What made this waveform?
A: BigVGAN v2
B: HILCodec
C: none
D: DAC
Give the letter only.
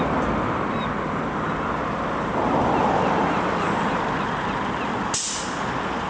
C